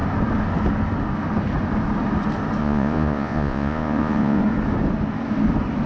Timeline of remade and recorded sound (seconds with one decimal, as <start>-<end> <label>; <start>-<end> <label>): 0.0-2.6 recorded; 2.6-4.4 remade; 4.4-5.9 recorded